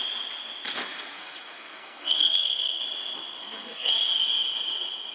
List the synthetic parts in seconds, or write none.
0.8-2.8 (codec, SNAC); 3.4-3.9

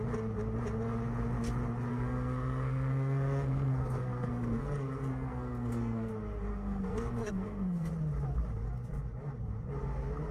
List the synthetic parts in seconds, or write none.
1.9-6.1 (codec, SNAC); 6.5-7.9

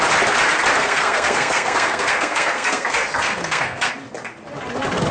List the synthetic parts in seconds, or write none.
0.8-3.9 (codec, SNAC)

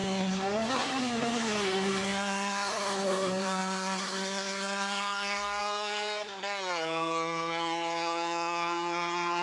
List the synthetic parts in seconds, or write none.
0.0-9.4 (codec, SNAC)

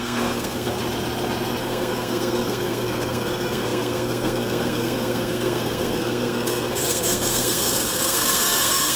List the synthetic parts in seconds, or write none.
0.0-0.8 (codec, SNAC); 1.6-9.0

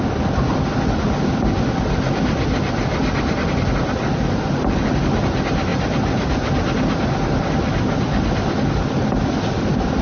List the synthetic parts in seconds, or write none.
none

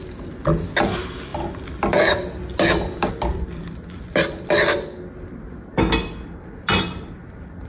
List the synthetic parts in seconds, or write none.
none